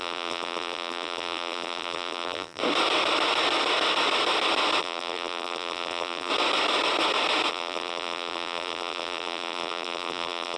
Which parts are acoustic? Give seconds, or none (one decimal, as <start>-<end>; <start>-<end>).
2.6-4.8; 6.3-7.5